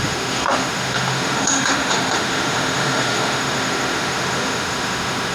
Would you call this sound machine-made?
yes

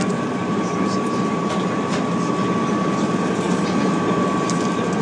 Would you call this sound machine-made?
no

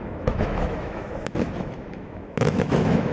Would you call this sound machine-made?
yes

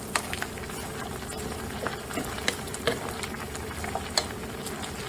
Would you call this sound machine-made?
no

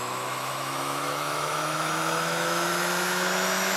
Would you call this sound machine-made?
yes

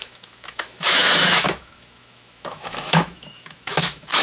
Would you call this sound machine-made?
yes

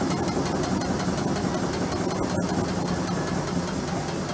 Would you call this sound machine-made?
no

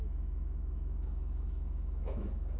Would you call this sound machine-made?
yes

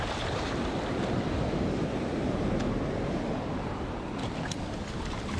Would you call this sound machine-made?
no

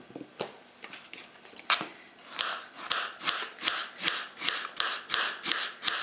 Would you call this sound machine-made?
no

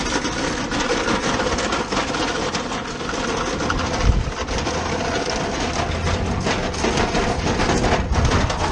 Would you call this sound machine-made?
no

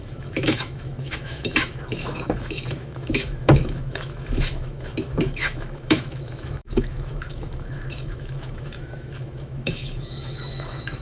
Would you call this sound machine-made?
yes